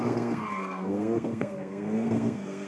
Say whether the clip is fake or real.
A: fake